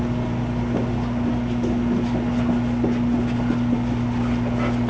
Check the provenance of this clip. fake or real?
real